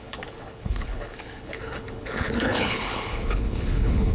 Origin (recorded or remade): remade